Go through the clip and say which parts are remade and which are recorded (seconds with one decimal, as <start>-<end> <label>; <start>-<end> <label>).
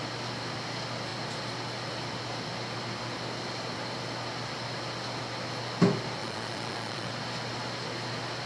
0.0-6.2 recorded; 6.2-7.1 remade; 7.1-8.5 recorded